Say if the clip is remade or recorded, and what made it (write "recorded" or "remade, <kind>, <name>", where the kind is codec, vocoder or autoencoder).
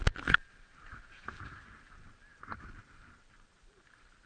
recorded